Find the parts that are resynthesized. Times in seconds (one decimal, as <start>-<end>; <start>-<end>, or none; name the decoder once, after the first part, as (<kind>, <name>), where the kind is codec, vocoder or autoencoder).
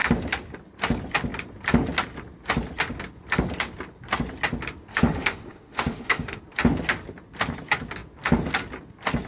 4.9-6.4 (autoencoder, DAC-VAE)